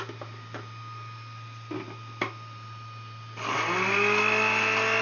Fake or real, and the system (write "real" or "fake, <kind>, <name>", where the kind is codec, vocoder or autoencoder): real